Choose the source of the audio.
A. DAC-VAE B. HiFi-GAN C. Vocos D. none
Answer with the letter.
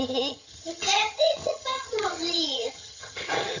B